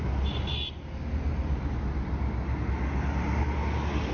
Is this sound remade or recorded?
recorded